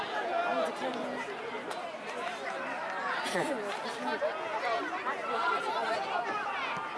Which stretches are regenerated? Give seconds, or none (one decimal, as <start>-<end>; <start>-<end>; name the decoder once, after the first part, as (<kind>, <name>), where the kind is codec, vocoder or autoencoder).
0.5-2.8 (vocoder, BigVGAN v2); 5.2-6.6